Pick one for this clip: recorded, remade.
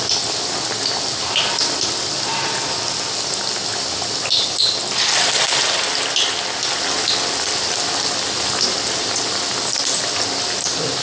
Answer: recorded